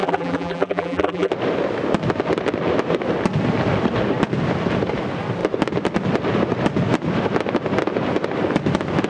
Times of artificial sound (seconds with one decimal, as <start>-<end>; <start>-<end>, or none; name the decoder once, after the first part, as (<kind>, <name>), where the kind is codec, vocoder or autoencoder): 0.0-1.3 (vocoder, BigVGAN v2)

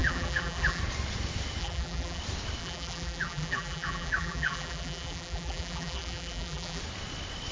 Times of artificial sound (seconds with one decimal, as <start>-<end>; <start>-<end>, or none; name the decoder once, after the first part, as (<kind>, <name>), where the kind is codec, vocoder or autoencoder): 0.0-0.8 (vocoder, BigVGAN v2); 1.6-2.2; 2.6-6.8